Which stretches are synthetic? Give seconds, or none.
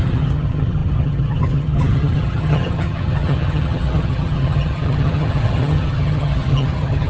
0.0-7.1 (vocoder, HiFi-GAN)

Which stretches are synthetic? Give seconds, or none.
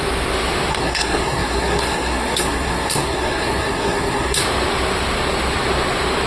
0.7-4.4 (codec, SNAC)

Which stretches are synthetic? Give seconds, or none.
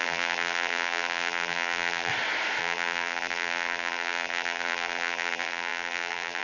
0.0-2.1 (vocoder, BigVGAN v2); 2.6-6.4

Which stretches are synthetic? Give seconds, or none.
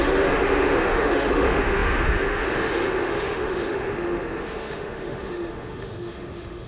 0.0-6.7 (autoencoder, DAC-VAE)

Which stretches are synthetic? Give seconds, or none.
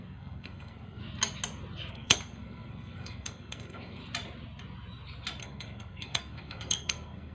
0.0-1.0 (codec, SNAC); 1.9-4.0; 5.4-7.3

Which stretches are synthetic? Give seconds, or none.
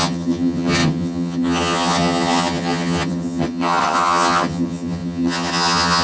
0.0-6.0 (vocoder, HiFi-GAN)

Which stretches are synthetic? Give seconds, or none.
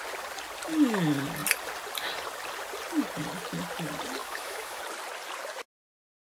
4.2-4.8 (autoencoder, DAC-VAE)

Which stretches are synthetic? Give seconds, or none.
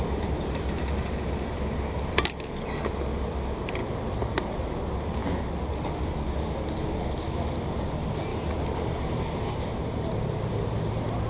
3.8-4.4 (vocoder, BigVGAN v2)